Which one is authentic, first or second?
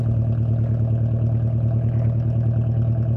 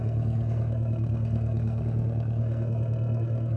first